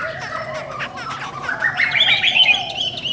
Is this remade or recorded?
recorded